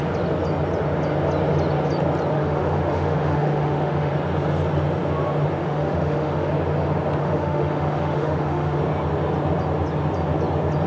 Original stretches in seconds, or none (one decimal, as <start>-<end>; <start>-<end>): 0.0-2.3; 4.1-5.6; 6.5-7.2; 8.8-10.9